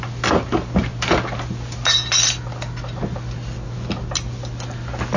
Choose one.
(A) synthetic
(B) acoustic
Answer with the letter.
B